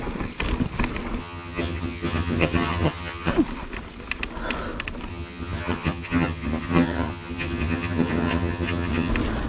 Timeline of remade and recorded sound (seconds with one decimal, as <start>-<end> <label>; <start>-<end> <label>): 0.0-1.2 recorded; 1.2-3.3 remade; 3.3-5.1 recorded; 5.1-9.1 remade; 9.1-9.5 recorded